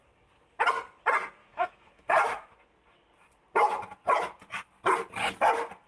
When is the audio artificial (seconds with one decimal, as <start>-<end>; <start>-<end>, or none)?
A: 1.4-2.6